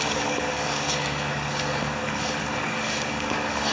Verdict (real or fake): fake